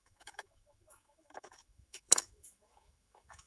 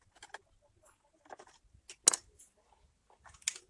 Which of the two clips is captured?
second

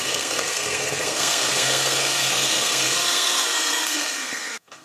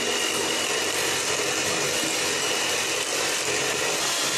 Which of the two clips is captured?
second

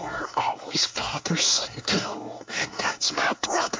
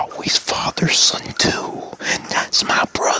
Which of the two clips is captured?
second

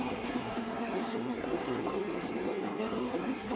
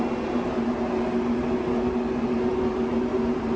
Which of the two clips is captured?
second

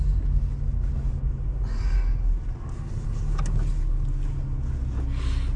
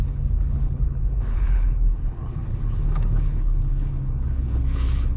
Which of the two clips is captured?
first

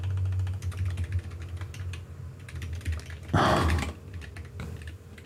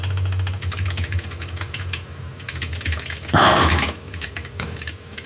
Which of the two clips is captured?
first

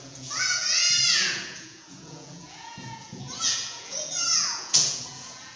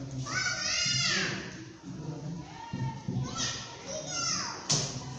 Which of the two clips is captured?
second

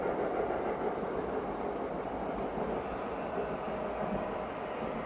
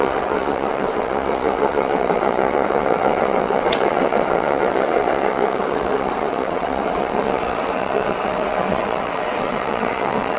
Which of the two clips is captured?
first